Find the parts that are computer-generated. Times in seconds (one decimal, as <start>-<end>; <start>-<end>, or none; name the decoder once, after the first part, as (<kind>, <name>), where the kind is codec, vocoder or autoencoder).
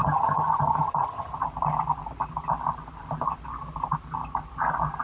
0.0-1.3 (vocoder, HiFi-GAN)